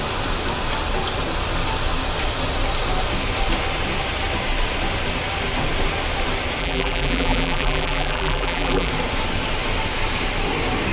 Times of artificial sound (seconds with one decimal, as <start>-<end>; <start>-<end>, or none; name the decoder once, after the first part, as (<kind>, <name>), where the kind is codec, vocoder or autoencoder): 6.6-8.9 (vocoder, BigVGAN v2)